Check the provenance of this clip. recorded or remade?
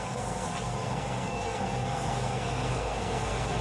remade